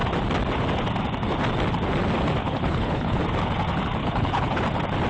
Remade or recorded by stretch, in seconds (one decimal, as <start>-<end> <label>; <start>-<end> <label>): 0.0-2.4 recorded; 2.4-3.2 remade; 3.2-4.0 recorded; 4.0-4.6 remade; 4.6-5.1 recorded